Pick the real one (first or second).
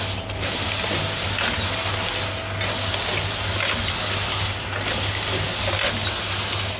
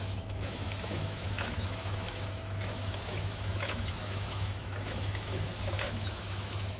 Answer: first